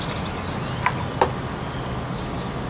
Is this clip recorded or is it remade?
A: recorded